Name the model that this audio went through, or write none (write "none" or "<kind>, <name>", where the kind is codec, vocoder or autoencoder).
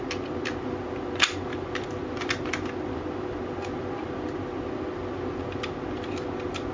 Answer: none